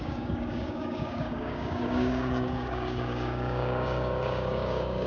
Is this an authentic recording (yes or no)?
no